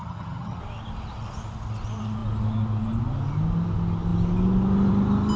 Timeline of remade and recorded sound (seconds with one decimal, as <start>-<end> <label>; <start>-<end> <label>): 0.0-0.6 remade; 0.6-5.4 recorded